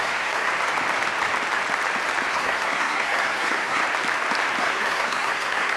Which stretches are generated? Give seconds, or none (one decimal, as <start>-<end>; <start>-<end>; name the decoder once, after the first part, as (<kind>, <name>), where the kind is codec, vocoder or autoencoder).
0.0-0.5 (codec, SNAC); 2.3-3.8; 4.6-5.8